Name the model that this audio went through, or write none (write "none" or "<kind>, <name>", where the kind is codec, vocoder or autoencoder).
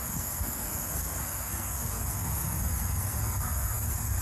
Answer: codec, SNAC